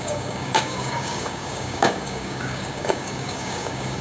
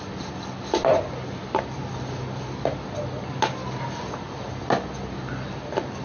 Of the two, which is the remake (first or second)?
first